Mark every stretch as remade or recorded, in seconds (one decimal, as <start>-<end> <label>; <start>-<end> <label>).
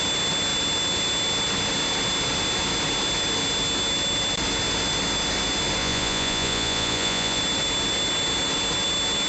0.0-5.8 recorded; 5.8-7.4 remade; 7.4-9.3 recorded